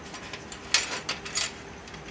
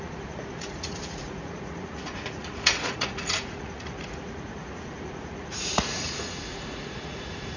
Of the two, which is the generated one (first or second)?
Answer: second